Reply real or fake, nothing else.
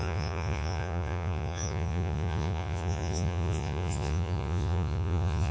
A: fake